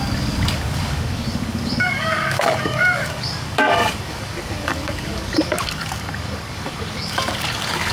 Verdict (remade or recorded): remade